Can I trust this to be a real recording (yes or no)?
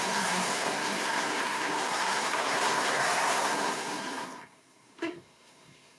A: no